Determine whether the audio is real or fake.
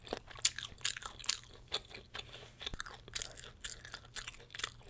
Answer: real